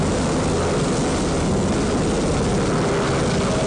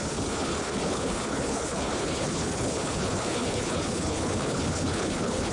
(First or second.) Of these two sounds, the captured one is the first